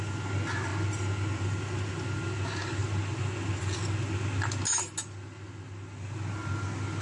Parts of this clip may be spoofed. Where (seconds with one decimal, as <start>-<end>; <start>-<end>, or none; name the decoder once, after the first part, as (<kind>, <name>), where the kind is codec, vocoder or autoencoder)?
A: none